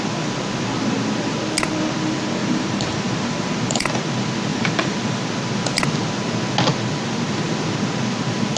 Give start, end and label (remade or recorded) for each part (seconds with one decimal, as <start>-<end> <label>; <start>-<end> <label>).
0.0-2.4 recorded; 2.4-4.0 remade; 4.0-4.5 recorded; 4.5-5.3 remade; 5.3-8.6 recorded

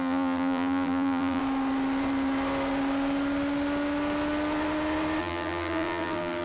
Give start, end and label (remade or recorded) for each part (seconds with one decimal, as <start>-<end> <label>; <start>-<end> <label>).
0.0-1.4 remade; 1.4-5.2 recorded; 5.2-6.4 remade

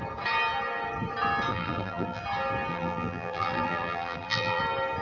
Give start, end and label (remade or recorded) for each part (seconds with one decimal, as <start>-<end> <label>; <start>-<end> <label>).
0.0-1.5 recorded; 1.5-2.2 remade; 2.2-2.7 recorded; 2.7-4.6 remade; 4.6-5.0 recorded

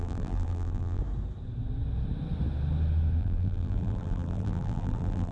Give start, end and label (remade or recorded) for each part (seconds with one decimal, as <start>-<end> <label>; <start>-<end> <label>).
0.0-1.0 remade; 1.0-3.2 recorded; 3.2-5.3 remade

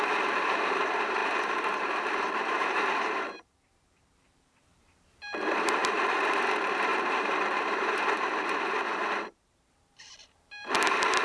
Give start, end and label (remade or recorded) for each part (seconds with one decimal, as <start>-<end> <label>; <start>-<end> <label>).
0.0-11.2 remade

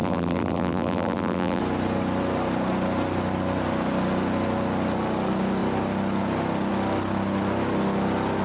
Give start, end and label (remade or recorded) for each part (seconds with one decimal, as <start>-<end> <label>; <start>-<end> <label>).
0.0-1.6 remade; 1.6-8.4 recorded